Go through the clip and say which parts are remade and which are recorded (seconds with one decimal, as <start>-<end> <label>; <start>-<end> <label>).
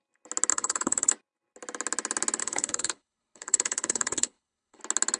0.0-0.5 recorded; 0.5-1.1 remade; 1.1-2.4 recorded; 2.4-4.8 remade; 4.8-5.2 recorded